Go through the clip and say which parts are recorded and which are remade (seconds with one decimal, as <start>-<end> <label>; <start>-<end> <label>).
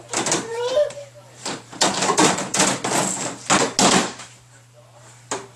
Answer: 0.0-0.5 recorded; 0.5-2.6 remade; 2.6-4.0 recorded; 4.0-5.0 remade; 5.0-5.6 recorded